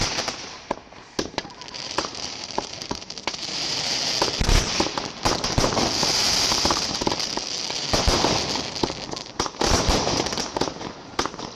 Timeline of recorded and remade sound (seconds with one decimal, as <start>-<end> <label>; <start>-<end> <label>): 0.0-0.8 recorded; 0.8-3.9 remade; 3.9-6.2 recorded; 6.2-7.0 remade; 7.0-11.6 recorded